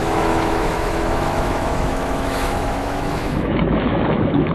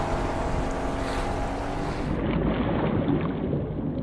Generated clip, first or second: first